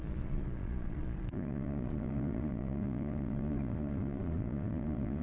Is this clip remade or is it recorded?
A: remade